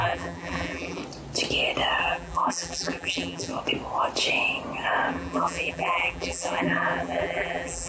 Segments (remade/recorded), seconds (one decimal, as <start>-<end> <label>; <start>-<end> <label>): 0.0-1.0 remade; 1.0-2.0 recorded; 2.0-3.5 remade; 3.5-5.1 recorded; 5.1-7.9 remade